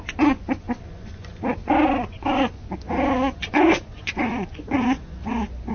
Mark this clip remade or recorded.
remade